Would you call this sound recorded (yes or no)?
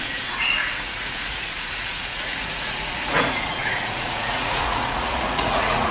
no